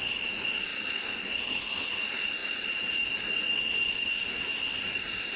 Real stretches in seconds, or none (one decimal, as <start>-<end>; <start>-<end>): 0.0-0.7; 1.9-2.4